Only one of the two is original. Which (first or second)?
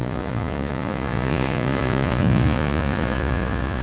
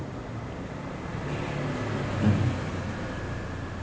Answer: second